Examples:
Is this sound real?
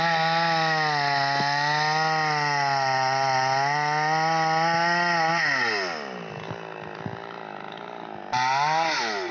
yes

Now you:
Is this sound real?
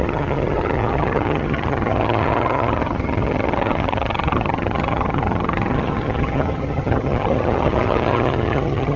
no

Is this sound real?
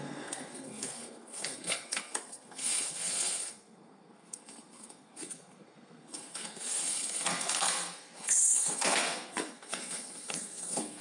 no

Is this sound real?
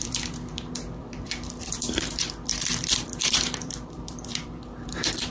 no